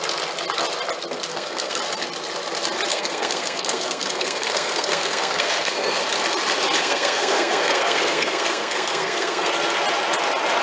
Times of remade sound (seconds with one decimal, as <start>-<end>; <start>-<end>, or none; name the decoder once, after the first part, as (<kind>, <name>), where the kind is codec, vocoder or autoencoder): 1.3-1.8 (codec, SNAC); 2.9-6.0; 6.8-9.5